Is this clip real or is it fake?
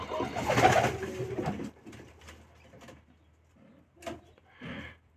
real